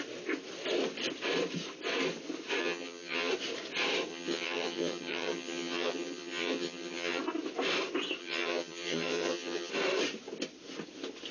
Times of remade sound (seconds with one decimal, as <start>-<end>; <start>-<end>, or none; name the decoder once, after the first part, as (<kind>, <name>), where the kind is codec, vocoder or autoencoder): 2.6-3.3 (vocoder, HiFi-GAN); 4.1-7.2; 8.2-9.7